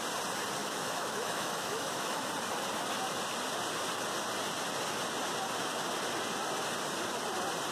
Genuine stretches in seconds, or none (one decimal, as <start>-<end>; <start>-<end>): 0.0-0.6; 2.3-7.7